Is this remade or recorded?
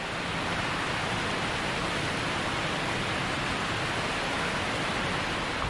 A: recorded